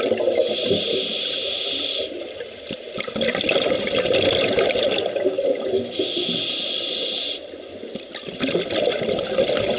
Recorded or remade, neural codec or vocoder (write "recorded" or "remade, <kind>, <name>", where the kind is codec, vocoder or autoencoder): recorded